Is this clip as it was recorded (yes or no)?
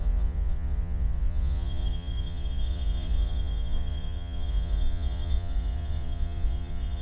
no